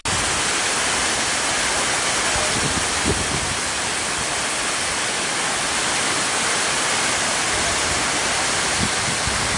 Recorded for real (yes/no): yes